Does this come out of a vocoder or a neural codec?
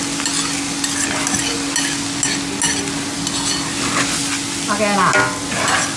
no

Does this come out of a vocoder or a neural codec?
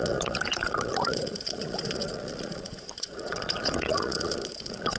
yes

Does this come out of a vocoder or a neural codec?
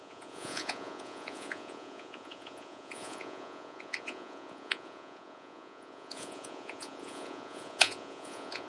yes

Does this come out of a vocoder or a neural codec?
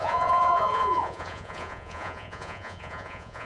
yes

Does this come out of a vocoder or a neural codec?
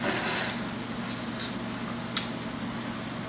no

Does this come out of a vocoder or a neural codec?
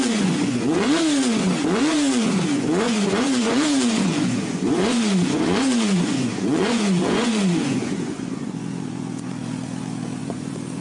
yes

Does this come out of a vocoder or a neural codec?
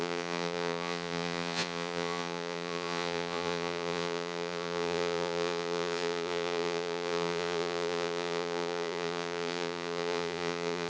yes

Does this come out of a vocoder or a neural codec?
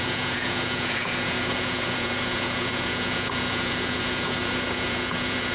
yes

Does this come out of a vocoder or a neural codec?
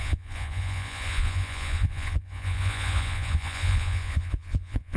yes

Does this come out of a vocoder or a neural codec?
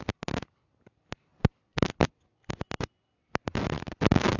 no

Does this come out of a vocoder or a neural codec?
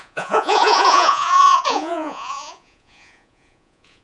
yes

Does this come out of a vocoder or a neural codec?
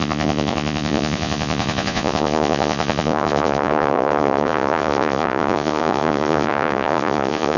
yes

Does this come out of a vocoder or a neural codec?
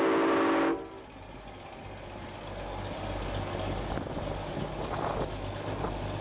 no